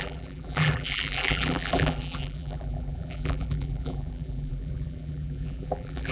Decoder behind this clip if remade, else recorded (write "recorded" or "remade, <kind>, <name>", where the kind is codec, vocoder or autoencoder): remade, vocoder, BigVGAN v2